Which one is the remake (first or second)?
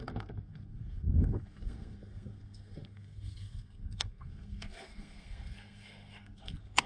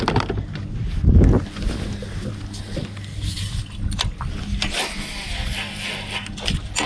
first